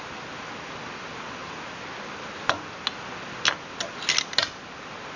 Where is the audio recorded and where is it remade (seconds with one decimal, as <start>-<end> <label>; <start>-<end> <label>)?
0.0-5.2 recorded